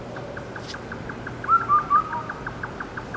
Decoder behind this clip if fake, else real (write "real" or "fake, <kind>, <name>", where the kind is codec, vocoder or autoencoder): real